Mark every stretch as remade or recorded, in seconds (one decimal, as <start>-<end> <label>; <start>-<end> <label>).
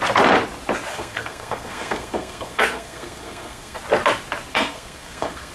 0.0-0.9 recorded; 0.9-3.8 remade; 3.8-4.5 recorded; 4.5-5.5 remade